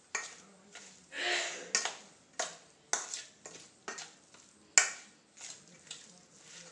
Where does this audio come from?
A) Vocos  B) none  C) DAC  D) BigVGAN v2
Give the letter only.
B